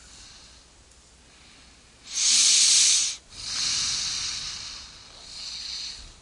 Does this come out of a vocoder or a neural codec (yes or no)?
no